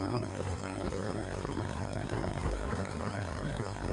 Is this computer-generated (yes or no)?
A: yes